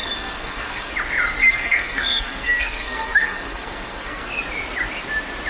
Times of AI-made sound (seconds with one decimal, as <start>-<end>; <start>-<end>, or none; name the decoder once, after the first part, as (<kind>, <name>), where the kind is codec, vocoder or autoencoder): 0.0-0.9 (codec, SNAC); 1.4-4.3